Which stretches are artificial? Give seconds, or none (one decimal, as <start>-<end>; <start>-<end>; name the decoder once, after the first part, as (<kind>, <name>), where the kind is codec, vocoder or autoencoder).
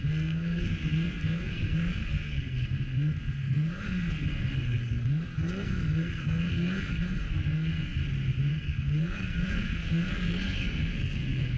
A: 0.0-8.0 (codec, SNAC); 8.5-11.6